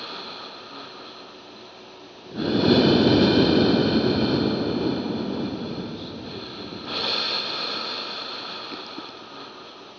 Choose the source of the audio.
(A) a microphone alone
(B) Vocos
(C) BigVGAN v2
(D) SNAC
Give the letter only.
A